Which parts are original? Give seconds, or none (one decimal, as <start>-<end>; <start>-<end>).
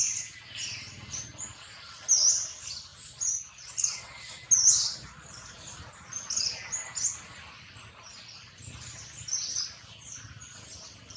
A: 0.0-11.2